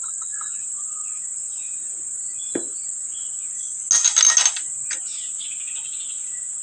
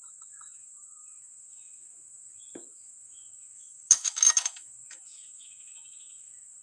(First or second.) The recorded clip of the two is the first